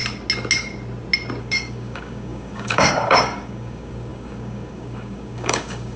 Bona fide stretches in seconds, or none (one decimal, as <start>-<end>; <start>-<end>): 0.0-1.4